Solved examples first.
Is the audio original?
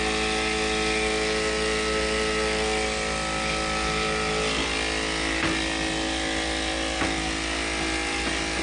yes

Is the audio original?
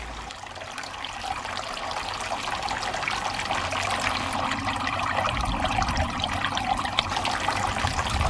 no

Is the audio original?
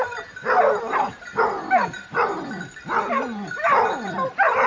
yes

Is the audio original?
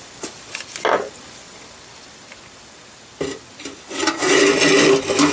yes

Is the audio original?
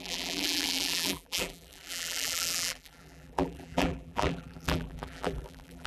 no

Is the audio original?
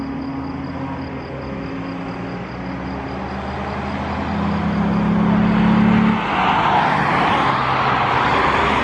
yes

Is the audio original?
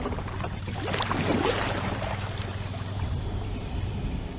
no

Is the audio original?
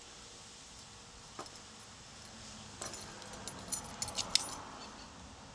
yes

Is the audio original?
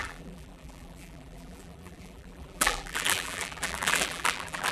no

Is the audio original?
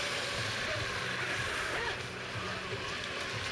yes